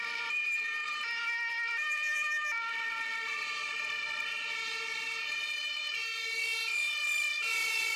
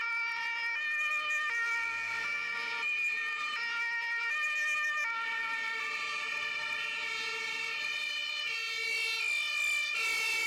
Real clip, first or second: second